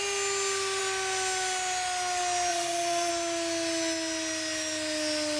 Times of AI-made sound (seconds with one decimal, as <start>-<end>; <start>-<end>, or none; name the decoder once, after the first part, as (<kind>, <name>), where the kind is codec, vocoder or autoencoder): 2.5-3.1 (vocoder, Vocos)